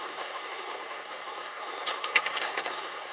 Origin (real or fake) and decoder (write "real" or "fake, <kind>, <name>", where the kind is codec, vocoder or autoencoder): fake, codec, SNAC